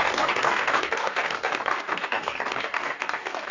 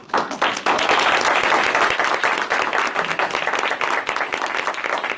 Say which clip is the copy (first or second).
first